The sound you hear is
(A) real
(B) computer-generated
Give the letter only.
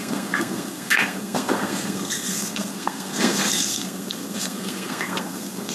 B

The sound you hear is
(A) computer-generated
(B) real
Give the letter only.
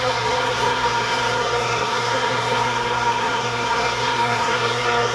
A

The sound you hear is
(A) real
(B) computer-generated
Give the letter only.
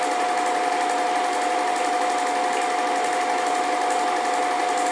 A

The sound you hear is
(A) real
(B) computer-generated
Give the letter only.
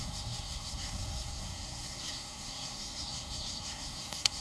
B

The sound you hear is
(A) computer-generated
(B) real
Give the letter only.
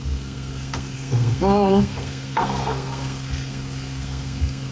A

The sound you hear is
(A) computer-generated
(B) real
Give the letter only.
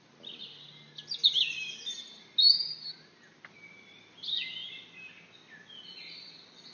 B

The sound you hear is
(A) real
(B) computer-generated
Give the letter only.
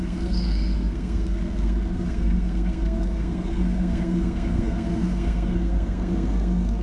B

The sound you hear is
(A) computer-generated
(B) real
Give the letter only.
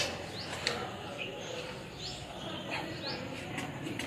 B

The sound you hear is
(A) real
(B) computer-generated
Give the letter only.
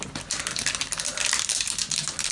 A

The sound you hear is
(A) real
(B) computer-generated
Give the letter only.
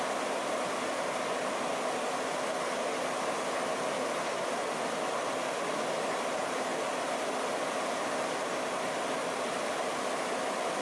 A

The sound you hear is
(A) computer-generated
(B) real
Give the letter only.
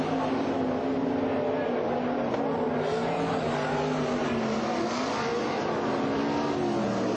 B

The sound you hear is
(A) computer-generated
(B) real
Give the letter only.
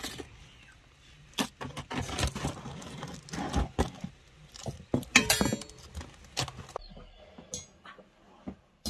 B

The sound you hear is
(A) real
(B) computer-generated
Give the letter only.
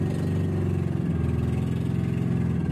A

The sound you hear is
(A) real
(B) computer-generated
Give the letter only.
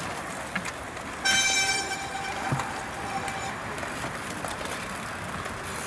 A